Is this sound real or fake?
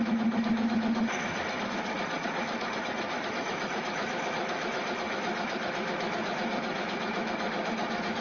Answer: fake